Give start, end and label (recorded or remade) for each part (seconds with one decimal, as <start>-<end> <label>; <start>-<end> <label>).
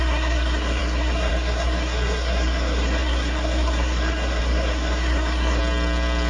0.0-5.6 remade; 5.6-6.3 recorded